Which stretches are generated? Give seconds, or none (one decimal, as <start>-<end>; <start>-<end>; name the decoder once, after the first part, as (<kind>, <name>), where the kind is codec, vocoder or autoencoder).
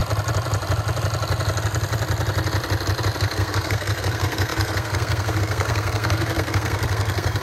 3.2-7.4 (codec, SNAC)